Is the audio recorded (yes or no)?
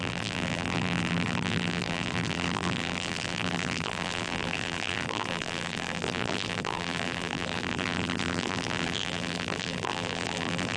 no